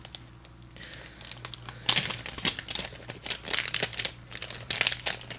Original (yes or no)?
yes